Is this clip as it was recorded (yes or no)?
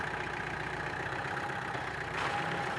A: no